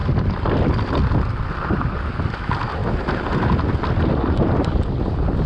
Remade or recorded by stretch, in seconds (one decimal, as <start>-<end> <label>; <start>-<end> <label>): 0.0-5.5 recorded